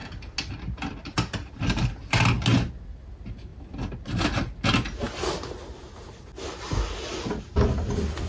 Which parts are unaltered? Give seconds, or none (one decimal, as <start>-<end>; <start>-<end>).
0.0-1.0; 2.2-8.3